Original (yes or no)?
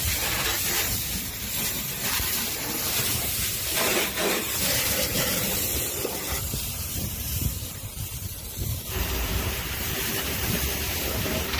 no